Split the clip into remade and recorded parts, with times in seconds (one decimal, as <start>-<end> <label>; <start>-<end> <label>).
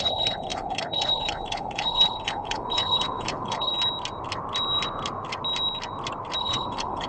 0.0-3.7 remade; 3.7-6.4 recorded; 6.4-7.1 remade